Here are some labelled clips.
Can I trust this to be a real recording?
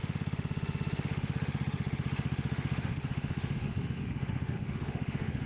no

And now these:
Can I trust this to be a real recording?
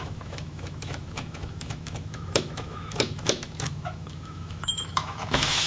no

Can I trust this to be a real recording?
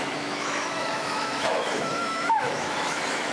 no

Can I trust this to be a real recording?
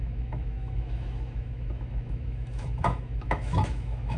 no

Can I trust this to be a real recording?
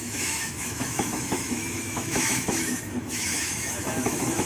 no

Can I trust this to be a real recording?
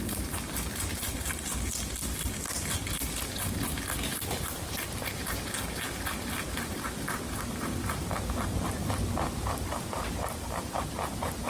yes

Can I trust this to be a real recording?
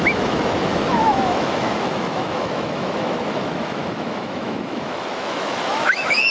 no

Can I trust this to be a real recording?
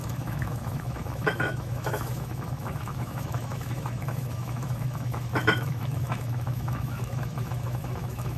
no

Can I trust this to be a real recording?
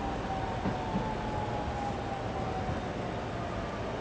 yes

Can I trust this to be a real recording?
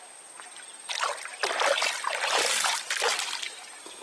yes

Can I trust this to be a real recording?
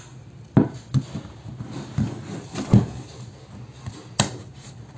yes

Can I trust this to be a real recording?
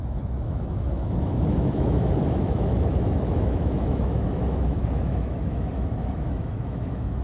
no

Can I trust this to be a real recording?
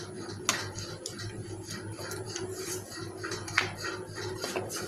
yes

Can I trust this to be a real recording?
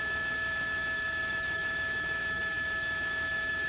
no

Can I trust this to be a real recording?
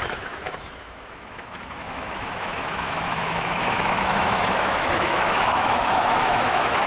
no